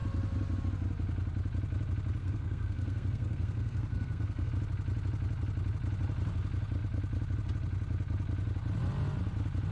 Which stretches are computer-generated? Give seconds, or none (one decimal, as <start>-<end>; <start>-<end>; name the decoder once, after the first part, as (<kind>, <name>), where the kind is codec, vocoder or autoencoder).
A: 2.2-4.5 (codec, SNAC)

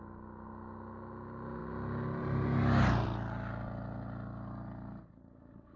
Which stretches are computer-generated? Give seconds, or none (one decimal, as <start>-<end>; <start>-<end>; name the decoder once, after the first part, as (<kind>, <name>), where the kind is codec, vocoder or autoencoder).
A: none

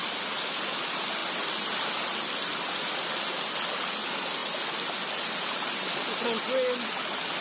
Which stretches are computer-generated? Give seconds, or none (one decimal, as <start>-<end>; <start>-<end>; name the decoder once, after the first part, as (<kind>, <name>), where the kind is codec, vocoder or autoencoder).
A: none

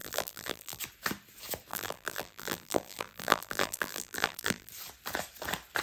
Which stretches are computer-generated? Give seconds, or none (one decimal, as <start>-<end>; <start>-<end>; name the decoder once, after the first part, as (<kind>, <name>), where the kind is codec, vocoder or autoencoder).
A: 0.0-0.8 (vocoder, BigVGAN v2); 1.7-4.7